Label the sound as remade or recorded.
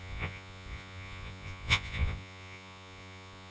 remade